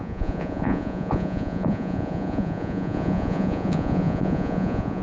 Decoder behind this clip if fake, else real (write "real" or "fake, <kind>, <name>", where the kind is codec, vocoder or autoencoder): fake, vocoder, Vocos